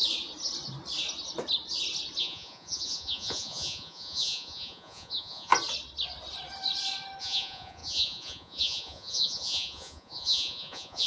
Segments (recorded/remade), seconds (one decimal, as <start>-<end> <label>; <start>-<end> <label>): 0.0-2.2 recorded; 2.2-5.5 remade; 5.5-7.2 recorded; 7.2-11.1 remade